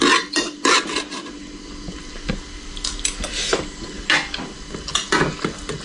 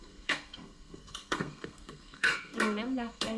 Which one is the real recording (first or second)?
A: first